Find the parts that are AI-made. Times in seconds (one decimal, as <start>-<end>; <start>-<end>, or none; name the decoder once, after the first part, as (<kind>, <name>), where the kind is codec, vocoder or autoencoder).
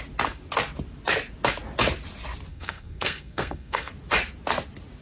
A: 2.5-3.9 (codec, SNAC)